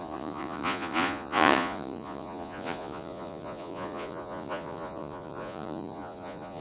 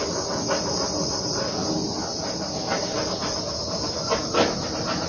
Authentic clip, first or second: second